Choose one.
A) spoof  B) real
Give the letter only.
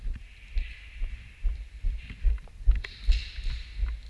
B